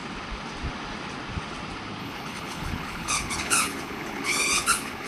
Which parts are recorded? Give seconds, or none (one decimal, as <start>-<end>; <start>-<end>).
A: 0.0-2.0